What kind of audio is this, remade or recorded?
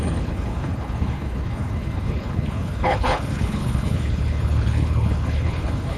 remade